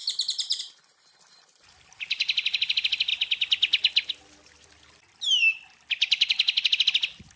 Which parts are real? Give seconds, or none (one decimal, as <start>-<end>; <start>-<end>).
0.6-7.4